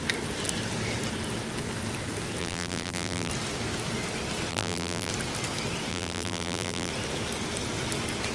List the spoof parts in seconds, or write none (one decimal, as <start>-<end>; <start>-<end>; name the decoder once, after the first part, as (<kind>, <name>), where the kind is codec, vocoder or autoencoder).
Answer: 2.4-3.3 (vocoder, BigVGAN v2); 4.5-5.1; 5.9-6.9